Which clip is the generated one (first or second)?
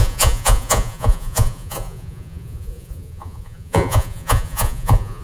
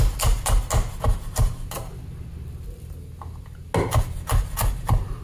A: first